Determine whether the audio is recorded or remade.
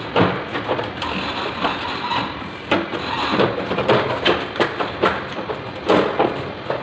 recorded